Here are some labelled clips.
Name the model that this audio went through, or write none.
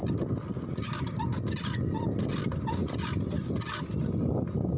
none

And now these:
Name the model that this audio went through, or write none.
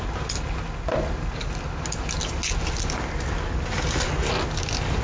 none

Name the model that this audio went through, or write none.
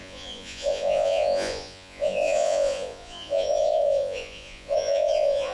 vocoder, Vocos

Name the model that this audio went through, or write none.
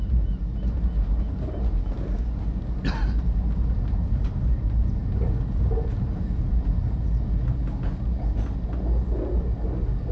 none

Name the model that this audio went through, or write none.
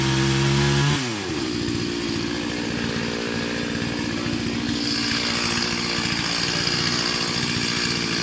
none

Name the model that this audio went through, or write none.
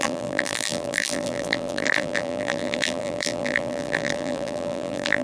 vocoder, BigVGAN v2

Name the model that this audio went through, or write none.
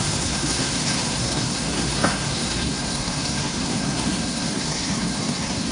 codec, SNAC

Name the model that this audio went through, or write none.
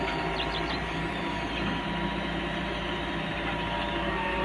vocoder, BigVGAN v2